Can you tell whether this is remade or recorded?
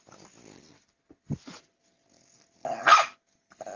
recorded